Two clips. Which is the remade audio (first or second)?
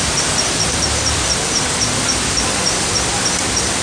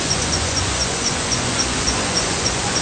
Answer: second